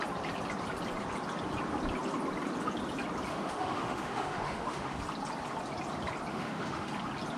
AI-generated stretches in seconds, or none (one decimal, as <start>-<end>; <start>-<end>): 3.3-5.0; 6.3-6.9

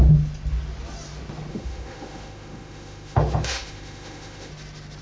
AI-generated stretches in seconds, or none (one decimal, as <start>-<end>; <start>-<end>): 1.5-4.5

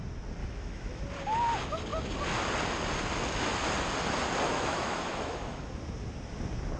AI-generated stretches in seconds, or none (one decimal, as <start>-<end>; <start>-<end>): 0.4-1.0; 4.5-5.6

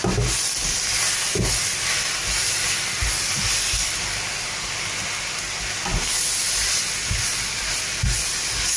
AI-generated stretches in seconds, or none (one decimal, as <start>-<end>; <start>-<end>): none